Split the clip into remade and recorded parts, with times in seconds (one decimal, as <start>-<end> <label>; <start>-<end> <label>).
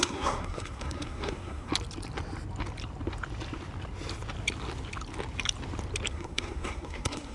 0.0-1.7 remade; 1.7-6.1 recorded; 6.1-7.3 remade